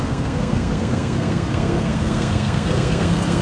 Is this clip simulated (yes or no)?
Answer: yes